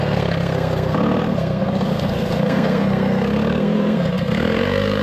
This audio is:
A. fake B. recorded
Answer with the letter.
A